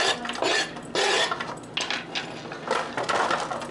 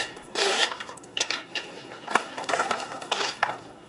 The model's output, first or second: second